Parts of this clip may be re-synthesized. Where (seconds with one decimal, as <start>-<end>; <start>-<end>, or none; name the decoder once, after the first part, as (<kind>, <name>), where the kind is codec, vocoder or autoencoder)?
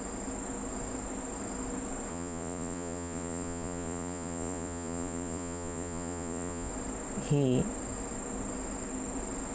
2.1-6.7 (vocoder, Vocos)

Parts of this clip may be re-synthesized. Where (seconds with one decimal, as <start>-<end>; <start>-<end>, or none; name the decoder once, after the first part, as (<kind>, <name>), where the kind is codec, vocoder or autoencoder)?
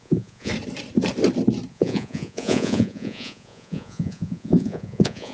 0.0-0.5 (vocoder, Vocos); 1.7-5.3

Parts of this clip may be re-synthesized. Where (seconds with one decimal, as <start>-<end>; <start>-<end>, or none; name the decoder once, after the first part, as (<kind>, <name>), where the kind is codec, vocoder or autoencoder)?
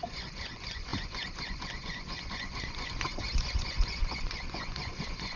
0.0-5.4 (vocoder, Vocos)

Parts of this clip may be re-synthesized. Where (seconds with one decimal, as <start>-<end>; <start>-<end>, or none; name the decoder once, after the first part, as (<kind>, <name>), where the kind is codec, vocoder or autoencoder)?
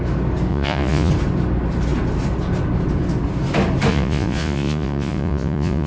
0.5-1.1 (vocoder, Vocos); 3.9-5.9